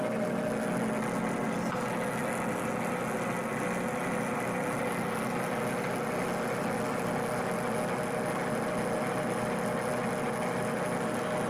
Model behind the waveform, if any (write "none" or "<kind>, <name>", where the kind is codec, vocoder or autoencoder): none